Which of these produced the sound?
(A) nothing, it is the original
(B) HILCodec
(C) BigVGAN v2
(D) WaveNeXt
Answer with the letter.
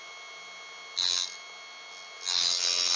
A